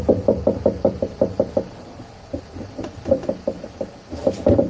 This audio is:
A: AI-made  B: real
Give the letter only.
A